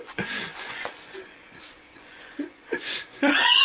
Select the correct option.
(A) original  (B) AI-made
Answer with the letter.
B